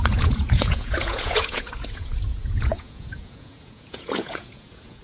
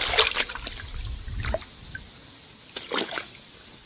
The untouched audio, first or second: second